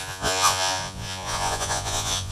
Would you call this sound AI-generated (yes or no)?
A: yes